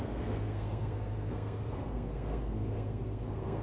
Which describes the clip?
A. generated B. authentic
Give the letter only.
A